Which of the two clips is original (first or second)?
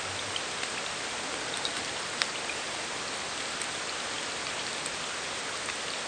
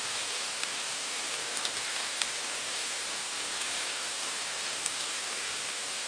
first